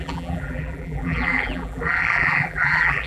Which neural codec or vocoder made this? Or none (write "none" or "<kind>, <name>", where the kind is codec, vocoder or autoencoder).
vocoder, BigVGAN v2